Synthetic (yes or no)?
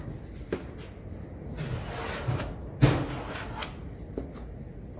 no